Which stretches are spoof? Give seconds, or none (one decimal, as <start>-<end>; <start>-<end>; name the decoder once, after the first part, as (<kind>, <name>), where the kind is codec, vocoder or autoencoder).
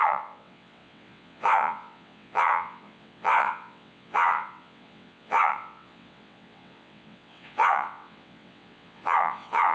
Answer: 0.0-9.7 (vocoder, WaveNeXt)